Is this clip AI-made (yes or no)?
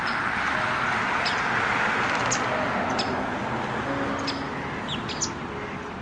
no